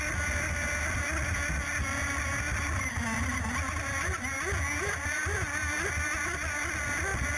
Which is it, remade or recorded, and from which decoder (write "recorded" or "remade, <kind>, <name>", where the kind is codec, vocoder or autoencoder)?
recorded